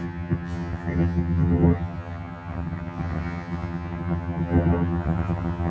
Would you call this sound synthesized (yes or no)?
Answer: yes